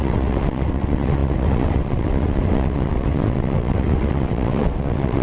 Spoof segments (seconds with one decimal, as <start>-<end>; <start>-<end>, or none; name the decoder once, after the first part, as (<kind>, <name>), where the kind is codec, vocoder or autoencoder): 0.0-5.2 (vocoder, WaveNeXt)